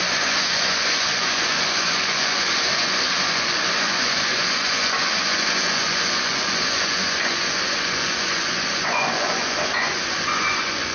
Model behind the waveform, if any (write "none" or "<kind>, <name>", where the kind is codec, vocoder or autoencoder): vocoder, Vocos